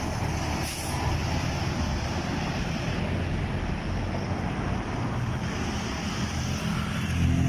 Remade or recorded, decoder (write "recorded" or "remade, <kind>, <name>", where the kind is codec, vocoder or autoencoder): recorded